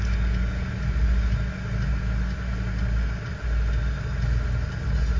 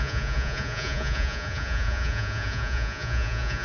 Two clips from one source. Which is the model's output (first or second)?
second